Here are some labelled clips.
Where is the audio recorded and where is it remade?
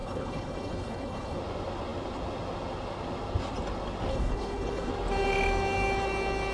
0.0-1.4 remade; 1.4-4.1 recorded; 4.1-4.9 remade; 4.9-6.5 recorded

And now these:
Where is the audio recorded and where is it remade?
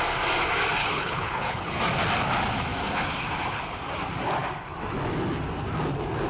0.0-0.8 recorded; 0.8-1.8 remade; 1.8-6.3 recorded